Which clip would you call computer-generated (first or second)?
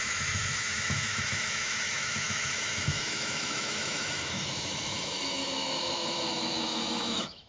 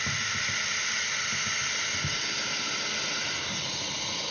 first